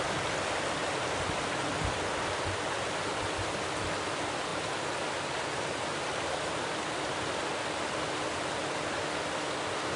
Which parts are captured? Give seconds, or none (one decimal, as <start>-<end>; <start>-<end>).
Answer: 0.0-0.8; 1.4-10.0